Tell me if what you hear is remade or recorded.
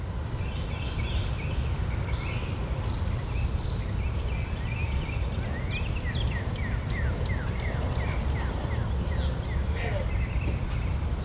recorded